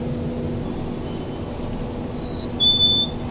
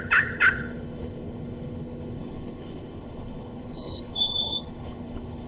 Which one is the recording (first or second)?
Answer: first